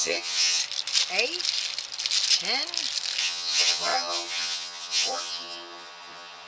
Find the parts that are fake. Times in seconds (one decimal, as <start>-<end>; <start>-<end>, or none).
0.0-0.6; 3.2-6.5